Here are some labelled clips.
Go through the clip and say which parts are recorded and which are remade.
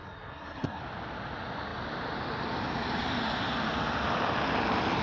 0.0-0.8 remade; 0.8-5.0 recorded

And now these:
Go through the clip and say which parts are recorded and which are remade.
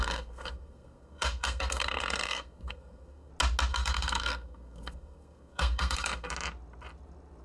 0.0-3.3 remade; 3.3-3.7 recorded; 3.7-6.3 remade; 6.3-7.4 recorded